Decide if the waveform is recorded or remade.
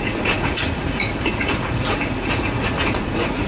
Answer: remade